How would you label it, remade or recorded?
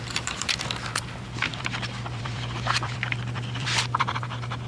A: remade